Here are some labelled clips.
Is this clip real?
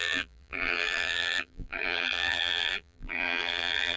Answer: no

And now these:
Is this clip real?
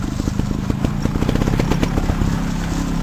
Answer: yes